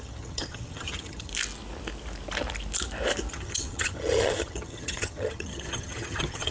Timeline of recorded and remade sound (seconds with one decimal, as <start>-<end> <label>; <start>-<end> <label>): 0.0-1.3 remade; 1.3-3.3 recorded; 3.3-6.5 remade